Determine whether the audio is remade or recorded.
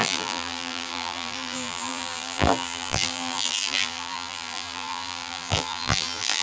remade